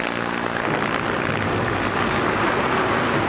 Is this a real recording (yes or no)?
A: yes